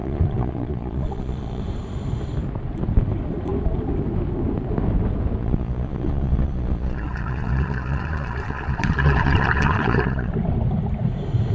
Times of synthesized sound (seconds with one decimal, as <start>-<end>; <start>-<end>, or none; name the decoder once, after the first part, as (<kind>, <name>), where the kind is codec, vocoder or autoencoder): 0.0-1.6 (vocoder, Vocos); 5.4-10.3

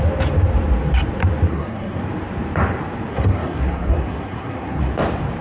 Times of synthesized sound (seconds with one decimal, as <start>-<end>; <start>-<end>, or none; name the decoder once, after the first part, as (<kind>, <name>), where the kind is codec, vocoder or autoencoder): 1.5-2.0 (codec, SNAC); 3.1-4.9

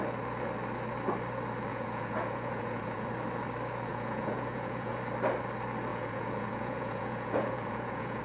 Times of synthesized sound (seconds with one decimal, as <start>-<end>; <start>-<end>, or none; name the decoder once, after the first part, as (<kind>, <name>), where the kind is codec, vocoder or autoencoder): 1.7-3.1 (vocoder, Vocos); 3.9-4.9; 5.9-8.2

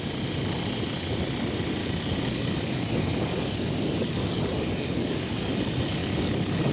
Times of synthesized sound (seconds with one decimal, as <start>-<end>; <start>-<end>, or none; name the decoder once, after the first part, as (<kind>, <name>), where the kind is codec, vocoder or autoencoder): 1.8-5.6 (codec, DAC); 6.0-6.7